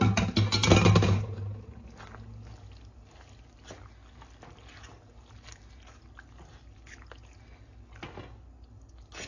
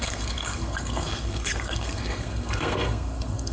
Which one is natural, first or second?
first